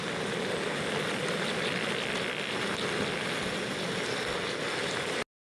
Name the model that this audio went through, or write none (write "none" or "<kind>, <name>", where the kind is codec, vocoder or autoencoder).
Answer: none